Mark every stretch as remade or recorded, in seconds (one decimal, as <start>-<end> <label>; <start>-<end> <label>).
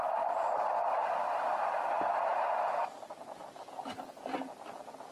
0.0-2.3 remade; 2.3-5.1 recorded